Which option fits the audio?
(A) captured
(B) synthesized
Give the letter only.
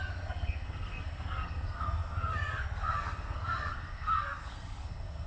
B